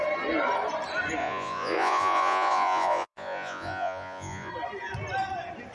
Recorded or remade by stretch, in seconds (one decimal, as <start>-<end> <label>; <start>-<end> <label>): 0.0-1.2 recorded; 1.2-4.5 remade; 4.5-5.7 recorded